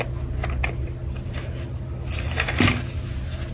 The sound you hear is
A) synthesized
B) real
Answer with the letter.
B